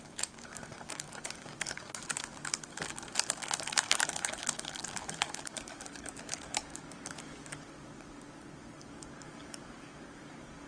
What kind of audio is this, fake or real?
fake